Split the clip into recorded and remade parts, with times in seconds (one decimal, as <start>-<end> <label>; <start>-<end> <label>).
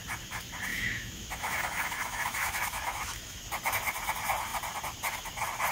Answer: 0.0-0.7 recorded; 0.7-3.4 remade; 3.4-5.7 recorded